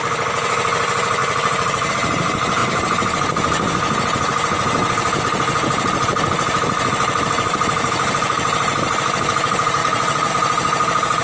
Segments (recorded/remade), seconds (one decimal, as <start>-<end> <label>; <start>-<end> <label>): 0.0-1.2 recorded; 1.2-1.9 remade; 1.9-9.8 recorded; 9.8-10.3 remade; 10.3-11.2 recorded